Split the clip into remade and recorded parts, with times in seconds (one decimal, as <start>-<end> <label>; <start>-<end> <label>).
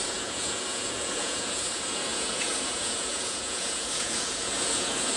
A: 0.0-5.2 remade